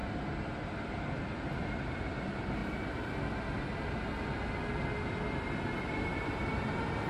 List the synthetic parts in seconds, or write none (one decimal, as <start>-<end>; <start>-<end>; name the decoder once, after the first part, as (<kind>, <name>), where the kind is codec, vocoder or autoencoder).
0.9-2.6 (vocoder, BigVGAN v2); 5.8-7.1